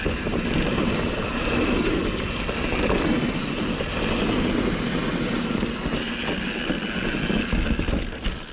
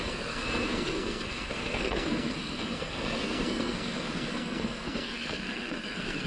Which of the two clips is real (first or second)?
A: first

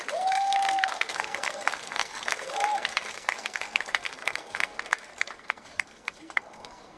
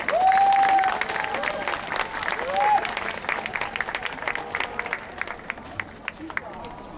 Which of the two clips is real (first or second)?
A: second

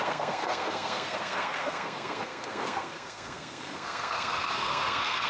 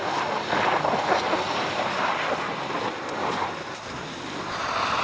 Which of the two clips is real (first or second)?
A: second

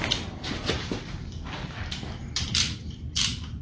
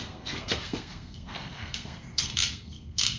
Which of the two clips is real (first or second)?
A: first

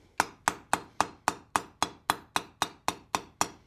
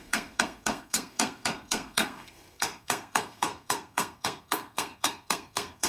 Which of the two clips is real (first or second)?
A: first